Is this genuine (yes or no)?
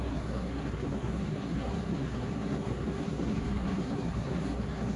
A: no